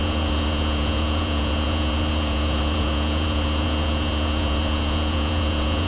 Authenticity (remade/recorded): remade